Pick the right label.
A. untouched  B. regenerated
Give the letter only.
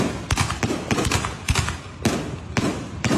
A